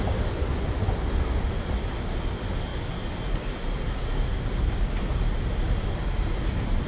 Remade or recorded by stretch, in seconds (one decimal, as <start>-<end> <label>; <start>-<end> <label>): 0.0-6.9 recorded